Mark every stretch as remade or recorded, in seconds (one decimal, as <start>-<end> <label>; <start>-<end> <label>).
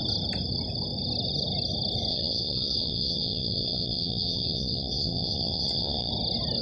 0.0-2.1 recorded; 2.1-6.1 remade; 6.1-6.6 recorded